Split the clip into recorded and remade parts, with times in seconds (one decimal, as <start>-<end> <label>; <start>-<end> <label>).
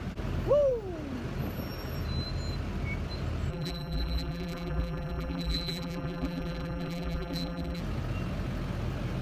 0.0-3.5 recorded; 3.5-7.8 remade; 7.8-9.2 recorded